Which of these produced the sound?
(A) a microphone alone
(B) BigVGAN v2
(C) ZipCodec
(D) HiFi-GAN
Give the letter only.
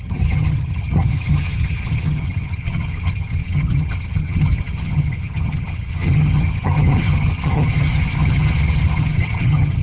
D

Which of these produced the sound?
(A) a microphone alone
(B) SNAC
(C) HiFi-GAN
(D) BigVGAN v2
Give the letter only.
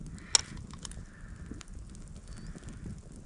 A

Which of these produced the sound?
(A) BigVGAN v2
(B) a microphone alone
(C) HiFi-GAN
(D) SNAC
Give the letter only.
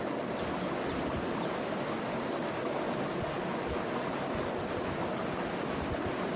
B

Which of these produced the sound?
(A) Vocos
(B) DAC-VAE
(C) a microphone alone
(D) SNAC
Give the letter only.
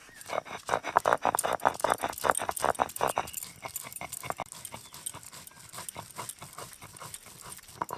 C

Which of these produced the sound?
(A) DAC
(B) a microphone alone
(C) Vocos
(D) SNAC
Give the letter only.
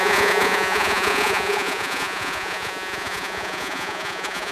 C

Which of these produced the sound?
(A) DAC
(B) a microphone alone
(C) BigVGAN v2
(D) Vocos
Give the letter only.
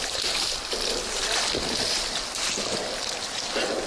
B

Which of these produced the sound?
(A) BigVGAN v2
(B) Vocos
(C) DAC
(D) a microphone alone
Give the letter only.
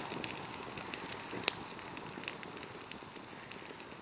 D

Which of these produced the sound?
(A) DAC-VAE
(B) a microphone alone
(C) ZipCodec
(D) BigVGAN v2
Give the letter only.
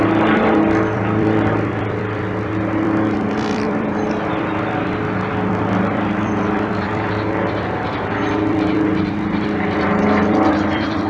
D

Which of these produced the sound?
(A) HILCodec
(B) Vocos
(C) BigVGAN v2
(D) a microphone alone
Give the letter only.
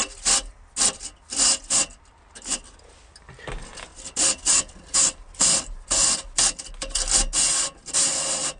D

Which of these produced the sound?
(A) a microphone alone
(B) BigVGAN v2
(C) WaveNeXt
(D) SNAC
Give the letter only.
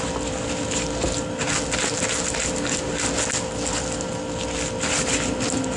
A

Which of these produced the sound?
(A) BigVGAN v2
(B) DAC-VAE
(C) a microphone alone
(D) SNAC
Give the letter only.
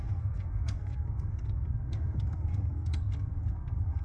D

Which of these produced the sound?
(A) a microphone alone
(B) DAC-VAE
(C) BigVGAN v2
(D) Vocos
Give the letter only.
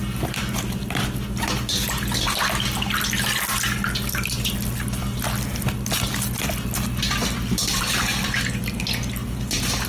A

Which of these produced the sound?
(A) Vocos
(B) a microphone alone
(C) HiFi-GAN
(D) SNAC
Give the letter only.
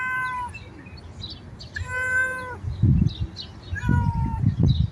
B